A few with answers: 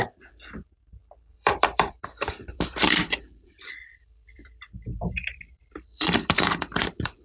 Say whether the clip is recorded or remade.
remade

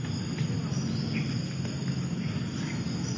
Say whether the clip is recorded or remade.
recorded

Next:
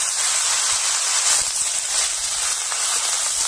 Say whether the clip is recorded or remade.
remade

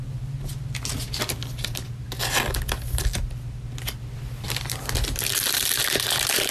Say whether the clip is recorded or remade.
recorded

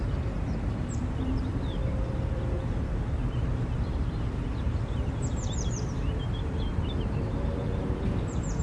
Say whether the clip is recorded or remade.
remade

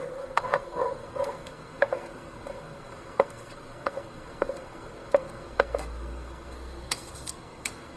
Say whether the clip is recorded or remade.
remade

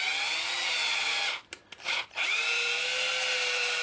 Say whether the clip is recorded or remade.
recorded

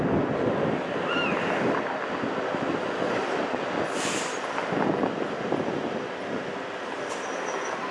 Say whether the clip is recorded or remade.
recorded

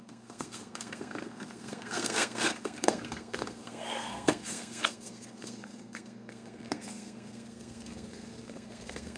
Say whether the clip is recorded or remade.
remade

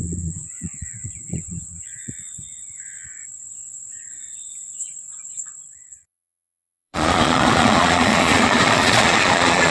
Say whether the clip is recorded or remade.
remade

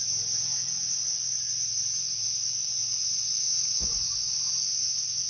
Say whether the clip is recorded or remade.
recorded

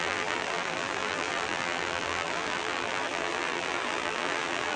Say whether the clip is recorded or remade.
remade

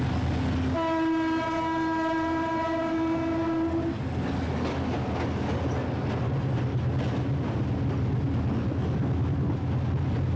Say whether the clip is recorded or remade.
recorded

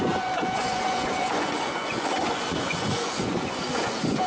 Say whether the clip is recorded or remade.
remade